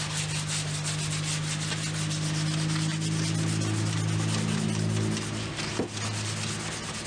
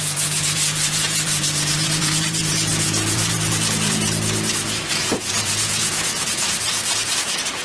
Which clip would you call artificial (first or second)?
second